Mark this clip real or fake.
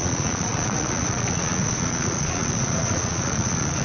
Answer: fake